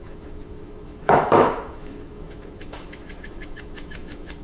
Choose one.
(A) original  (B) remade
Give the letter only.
B